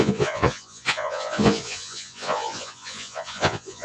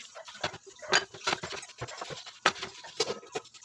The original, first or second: second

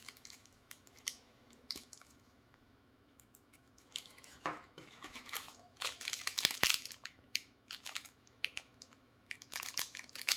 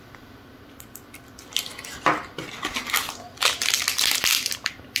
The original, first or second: second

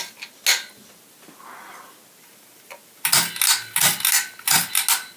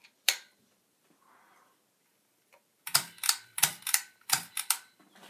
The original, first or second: first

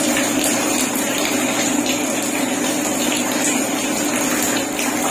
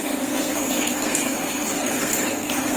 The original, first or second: first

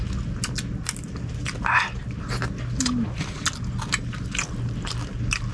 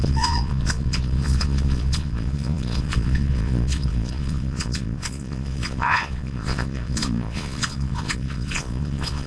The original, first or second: first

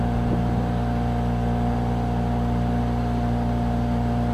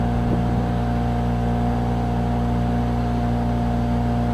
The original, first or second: second